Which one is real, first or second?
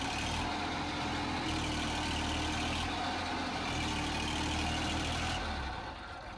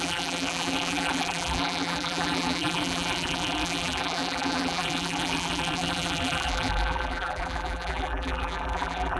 first